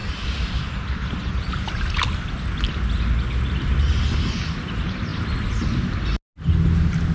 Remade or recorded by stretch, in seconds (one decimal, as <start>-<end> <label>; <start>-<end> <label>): 0.0-7.1 recorded